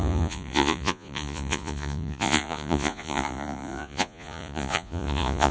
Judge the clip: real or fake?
fake